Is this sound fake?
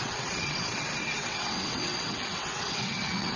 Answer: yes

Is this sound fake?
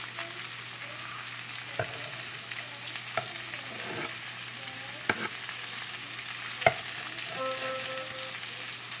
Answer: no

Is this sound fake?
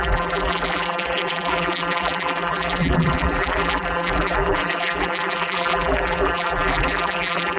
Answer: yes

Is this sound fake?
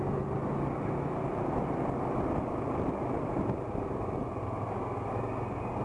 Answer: no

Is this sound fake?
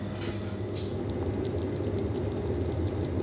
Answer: no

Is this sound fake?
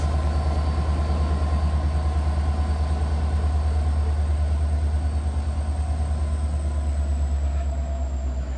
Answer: no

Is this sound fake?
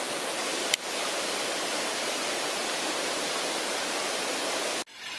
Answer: no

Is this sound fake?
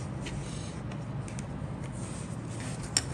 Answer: no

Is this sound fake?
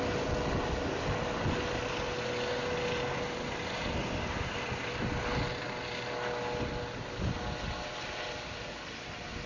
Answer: no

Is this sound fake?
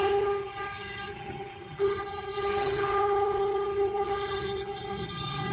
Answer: yes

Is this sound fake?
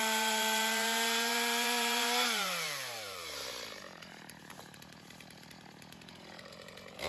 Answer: yes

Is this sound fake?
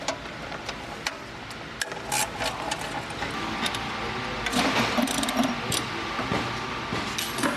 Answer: no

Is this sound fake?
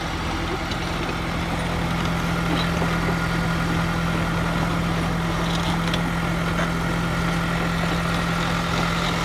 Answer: no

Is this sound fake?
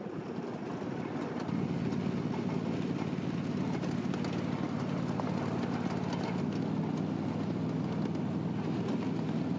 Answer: no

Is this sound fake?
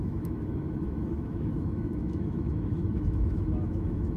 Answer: yes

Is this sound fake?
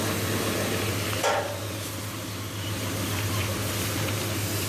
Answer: no